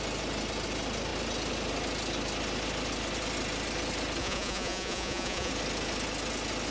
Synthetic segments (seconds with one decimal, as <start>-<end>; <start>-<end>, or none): 4.2-5.5